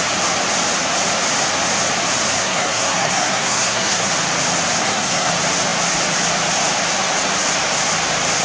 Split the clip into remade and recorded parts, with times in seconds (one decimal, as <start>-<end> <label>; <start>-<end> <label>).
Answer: 0.0-2.4 recorded; 2.4-4.1 remade; 4.1-4.8 recorded; 4.8-5.3 remade; 5.3-8.4 recorded